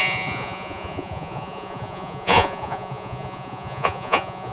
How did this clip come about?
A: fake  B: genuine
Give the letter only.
A